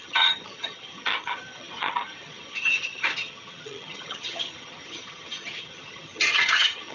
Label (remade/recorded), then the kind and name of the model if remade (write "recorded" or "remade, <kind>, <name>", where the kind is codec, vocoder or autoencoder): remade, vocoder, HiFi-GAN